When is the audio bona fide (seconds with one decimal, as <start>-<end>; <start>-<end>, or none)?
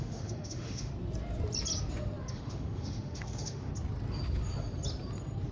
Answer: 0.9-2.3; 3.7-5.5